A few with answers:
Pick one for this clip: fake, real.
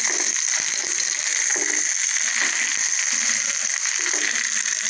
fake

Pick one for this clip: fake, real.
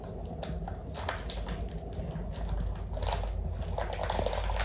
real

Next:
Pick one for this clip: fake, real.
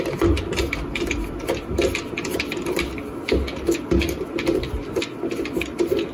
real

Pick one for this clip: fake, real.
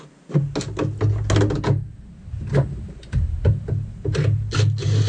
real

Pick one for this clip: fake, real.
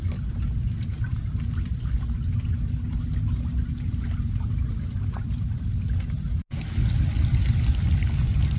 real